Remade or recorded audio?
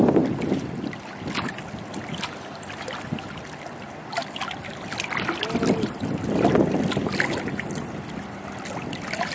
recorded